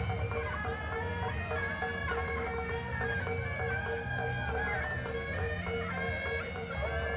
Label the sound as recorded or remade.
recorded